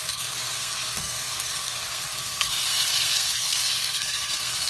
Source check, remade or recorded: remade